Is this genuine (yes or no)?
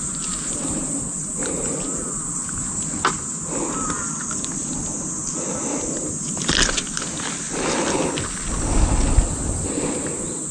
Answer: yes